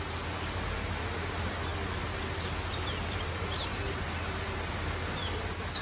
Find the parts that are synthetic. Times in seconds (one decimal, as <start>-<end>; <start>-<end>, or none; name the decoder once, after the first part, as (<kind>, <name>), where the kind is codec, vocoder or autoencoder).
none